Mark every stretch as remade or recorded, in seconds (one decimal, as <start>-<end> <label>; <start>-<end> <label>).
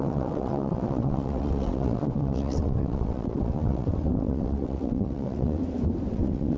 0.0-5.6 remade; 5.6-6.1 recorded; 6.1-6.6 remade